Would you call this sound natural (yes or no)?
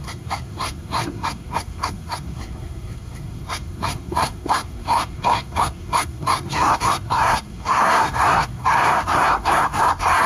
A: no